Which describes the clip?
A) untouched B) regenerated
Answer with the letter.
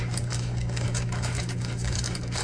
B